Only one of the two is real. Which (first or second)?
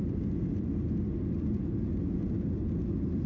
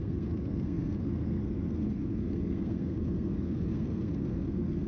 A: first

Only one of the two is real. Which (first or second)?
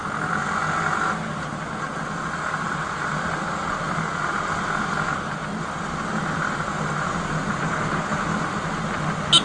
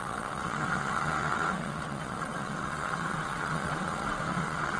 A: first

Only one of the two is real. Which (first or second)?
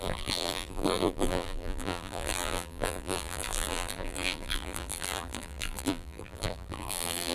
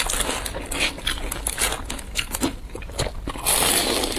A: second